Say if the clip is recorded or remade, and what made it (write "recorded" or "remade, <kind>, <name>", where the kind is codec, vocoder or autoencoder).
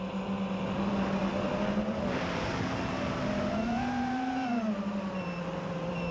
recorded